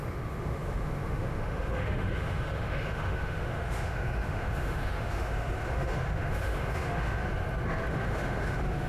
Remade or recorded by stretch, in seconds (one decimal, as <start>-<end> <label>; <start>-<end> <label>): 0.0-7.2 remade; 7.2-7.9 recorded; 7.9-8.9 remade